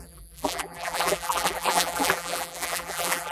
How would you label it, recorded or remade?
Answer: remade